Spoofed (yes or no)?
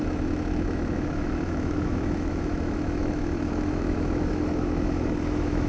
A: yes